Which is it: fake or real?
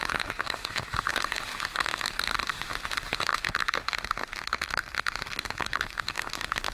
fake